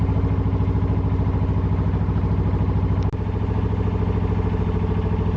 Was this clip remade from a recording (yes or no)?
no